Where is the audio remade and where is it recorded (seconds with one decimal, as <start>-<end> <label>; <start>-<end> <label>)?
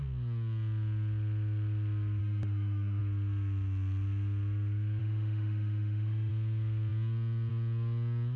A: 0.0-2.2 recorded; 2.2-3.0 remade; 3.0-5.0 recorded; 5.0-6.3 remade; 6.3-8.4 recorded